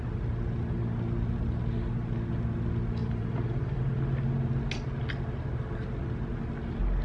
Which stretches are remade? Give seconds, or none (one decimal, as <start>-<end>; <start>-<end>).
3.0-3.8